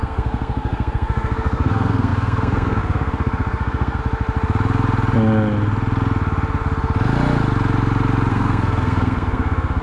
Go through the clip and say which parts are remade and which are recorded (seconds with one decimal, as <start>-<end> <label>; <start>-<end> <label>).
0.0-4.0 remade; 4.0-8.3 recorded; 8.3-9.8 remade